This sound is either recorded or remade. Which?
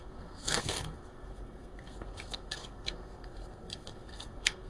remade